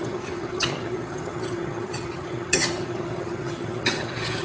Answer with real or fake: fake